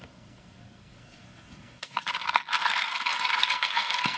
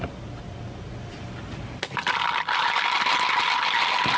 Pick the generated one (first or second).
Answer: first